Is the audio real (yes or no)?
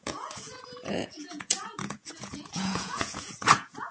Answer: no